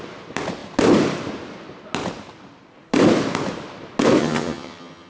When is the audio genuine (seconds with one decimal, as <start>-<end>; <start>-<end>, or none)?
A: 0.0-4.2